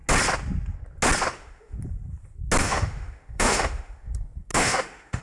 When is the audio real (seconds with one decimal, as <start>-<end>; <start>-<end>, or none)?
0.0-1.3; 1.8-2.6; 4.1-4.5